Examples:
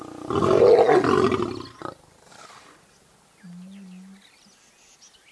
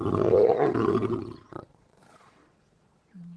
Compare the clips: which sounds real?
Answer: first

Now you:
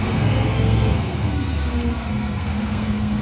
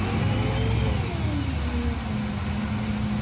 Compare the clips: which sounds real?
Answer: second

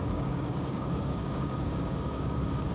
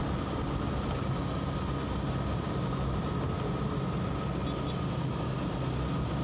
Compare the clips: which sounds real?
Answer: second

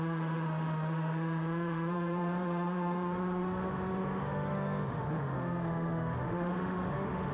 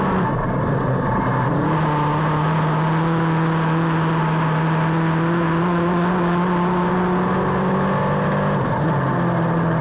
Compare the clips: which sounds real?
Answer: second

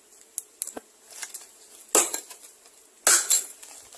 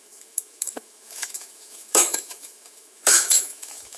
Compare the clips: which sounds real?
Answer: first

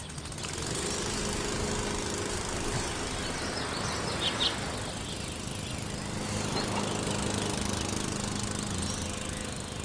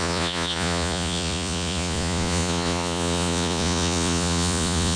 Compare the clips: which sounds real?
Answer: first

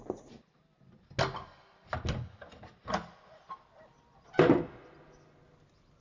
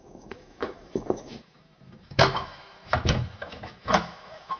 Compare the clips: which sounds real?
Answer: first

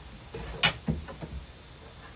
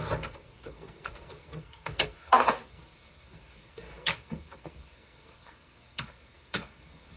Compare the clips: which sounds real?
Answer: first